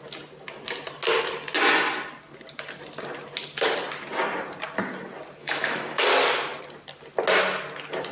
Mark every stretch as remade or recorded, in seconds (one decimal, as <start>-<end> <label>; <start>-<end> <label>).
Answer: 0.0-5.4 recorded; 5.4-6.0 remade; 6.0-8.1 recorded